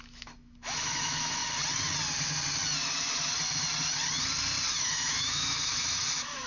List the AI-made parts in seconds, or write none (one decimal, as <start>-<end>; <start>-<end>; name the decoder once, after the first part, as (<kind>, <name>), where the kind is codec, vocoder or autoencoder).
0.0-1.4 (autoencoder, DAC-VAE); 4.7-6.5